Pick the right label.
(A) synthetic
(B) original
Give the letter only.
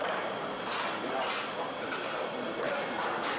A